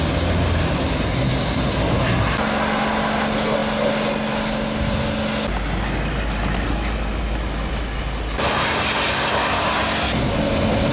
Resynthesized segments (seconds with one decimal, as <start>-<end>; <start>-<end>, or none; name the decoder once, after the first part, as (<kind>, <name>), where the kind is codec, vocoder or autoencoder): none